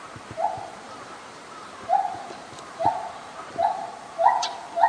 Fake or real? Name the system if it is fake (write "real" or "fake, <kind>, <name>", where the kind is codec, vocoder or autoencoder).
fake, vocoder, BigVGAN v2